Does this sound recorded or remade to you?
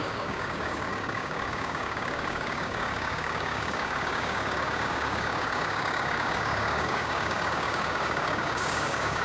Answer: remade